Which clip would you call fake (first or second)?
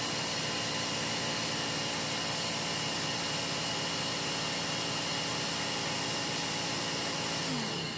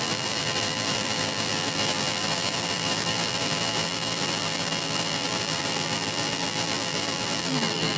second